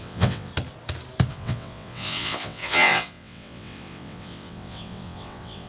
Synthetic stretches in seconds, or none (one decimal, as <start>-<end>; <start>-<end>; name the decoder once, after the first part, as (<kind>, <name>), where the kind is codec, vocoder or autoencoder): 0.0-0.5 (vocoder, WaveNeXt); 1.3-5.7